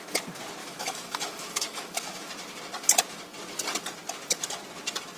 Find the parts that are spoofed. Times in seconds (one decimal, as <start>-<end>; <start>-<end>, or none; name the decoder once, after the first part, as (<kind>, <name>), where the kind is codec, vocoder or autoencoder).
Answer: 0.6-2.3 (autoencoder, DAC-VAE)